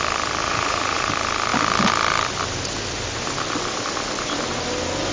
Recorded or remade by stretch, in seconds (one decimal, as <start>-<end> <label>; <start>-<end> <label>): 0.0-0.4 recorded; 0.4-1.1 remade; 1.1-5.1 recorded